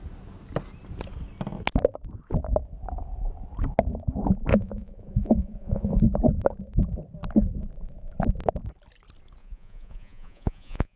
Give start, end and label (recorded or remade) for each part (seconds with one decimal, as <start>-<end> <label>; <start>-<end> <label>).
0.0-4.5 recorded; 4.5-6.0 remade; 6.0-9.4 recorded; 9.4-11.0 remade